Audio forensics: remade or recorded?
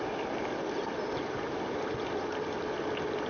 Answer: recorded